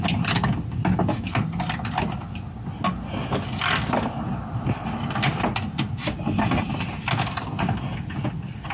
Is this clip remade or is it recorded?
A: recorded